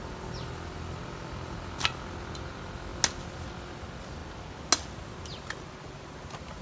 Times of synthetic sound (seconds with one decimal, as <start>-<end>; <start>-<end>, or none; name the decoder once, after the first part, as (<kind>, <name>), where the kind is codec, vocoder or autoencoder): none